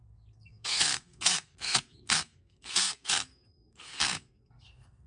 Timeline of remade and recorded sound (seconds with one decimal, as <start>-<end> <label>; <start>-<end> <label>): 0.0-5.1 remade